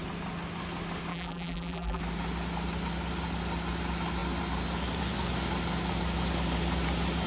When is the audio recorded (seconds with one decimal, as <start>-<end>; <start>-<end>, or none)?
0.0-1.1; 2.0-7.3